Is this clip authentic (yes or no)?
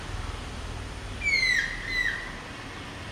yes